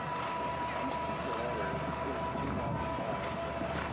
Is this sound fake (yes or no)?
no